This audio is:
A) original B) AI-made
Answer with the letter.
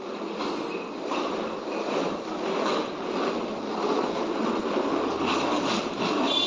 A